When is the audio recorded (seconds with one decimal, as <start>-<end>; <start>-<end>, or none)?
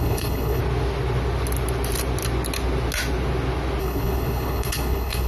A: 0.6-3.8